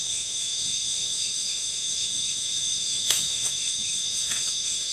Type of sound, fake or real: fake